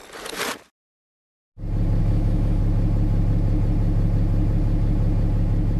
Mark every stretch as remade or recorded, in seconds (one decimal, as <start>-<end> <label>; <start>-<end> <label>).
0.0-2.0 recorded; 2.0-2.6 remade; 2.6-5.8 recorded